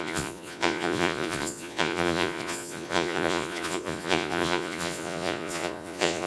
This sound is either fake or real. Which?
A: fake